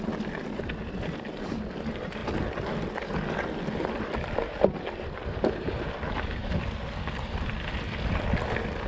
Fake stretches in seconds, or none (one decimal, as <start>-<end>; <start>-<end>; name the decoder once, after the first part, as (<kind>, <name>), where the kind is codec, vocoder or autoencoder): 6.4-7.5 (vocoder, BigVGAN v2)